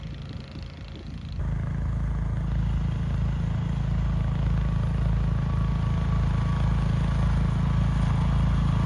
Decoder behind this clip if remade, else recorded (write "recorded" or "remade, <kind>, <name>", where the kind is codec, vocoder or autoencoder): recorded